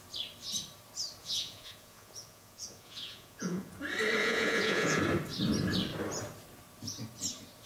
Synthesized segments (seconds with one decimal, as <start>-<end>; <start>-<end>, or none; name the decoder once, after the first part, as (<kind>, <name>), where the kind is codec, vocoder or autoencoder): 1.2-3.7 (vocoder, Vocos); 4.2-5.0